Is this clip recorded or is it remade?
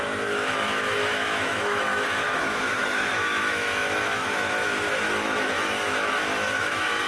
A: remade